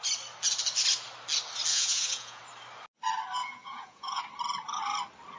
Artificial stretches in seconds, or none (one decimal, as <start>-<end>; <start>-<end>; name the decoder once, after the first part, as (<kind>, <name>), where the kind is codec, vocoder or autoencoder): 1.7-2.4 (vocoder, Vocos); 3.4-4.2